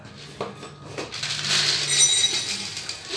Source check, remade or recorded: recorded